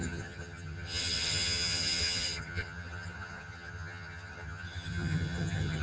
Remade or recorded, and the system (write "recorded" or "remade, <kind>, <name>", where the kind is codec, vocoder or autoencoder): remade, vocoder, HiFi-GAN